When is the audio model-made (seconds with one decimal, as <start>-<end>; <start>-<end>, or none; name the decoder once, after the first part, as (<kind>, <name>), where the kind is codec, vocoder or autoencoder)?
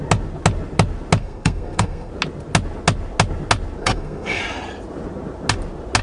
1.2-2.1 (codec, SNAC); 3.8-4.4